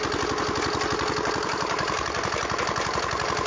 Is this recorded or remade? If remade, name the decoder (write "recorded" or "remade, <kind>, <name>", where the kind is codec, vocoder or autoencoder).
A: recorded